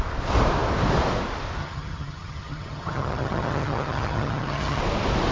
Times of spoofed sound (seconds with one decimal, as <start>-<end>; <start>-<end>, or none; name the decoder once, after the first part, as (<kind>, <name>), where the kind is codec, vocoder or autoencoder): 1.6-4.8 (vocoder, HiFi-GAN)